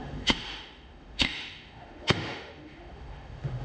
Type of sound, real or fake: fake